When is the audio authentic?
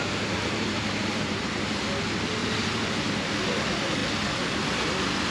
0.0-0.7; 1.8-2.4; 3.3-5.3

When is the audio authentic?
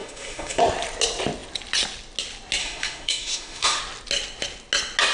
0.6-2.6; 3.8-5.1